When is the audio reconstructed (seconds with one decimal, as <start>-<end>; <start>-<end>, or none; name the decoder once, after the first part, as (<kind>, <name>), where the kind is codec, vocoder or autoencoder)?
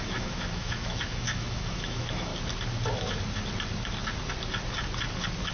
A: 0.0-2.3 (autoencoder, DAC-VAE)